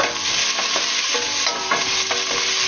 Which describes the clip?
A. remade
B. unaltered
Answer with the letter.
B